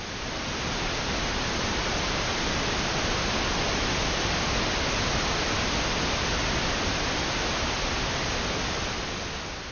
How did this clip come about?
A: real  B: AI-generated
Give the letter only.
A